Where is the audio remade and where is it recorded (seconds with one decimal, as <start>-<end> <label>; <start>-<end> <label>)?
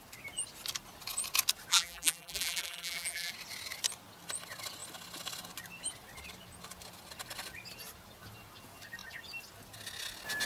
0.0-1.7 recorded; 1.7-3.3 remade; 3.3-10.5 recorded